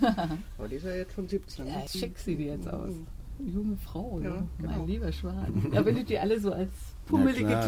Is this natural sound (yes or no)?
yes